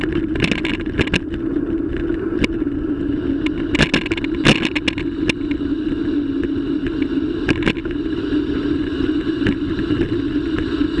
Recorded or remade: recorded